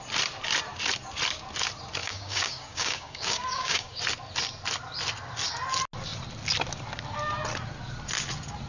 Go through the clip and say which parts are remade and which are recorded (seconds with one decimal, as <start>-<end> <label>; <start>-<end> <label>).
0.0-2.0 recorded; 2.0-4.0 remade; 4.0-8.7 recorded